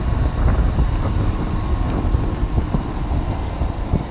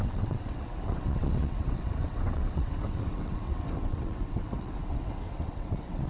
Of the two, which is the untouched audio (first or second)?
first